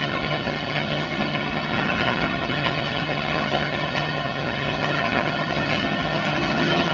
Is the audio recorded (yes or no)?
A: no